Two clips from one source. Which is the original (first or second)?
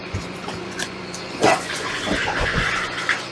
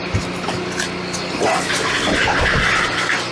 second